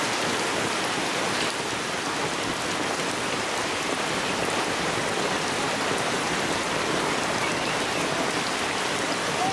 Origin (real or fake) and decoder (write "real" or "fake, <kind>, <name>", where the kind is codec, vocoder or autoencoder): real